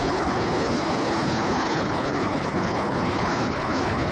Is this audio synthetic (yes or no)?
yes